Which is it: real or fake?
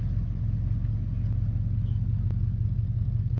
real